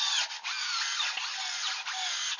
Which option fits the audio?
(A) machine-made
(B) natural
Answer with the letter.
B